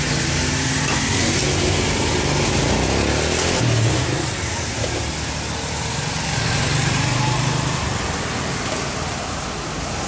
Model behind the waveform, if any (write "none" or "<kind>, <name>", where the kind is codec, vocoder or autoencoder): none